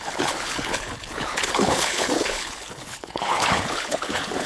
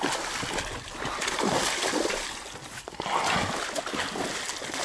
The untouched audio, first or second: second